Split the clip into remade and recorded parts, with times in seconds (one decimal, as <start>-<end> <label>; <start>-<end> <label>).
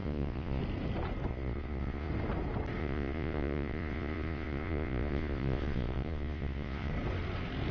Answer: 0.0-0.6 remade; 0.6-1.3 recorded; 1.3-2.1 remade; 2.1-2.8 recorded; 2.8-6.9 remade; 6.9-7.7 recorded